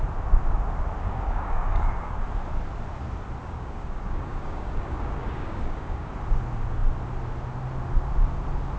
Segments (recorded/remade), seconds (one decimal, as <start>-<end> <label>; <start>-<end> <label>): 0.0-1.0 recorded; 1.0-2.2 remade; 2.2-3.4 recorded; 3.4-6.1 remade; 6.1-8.8 recorded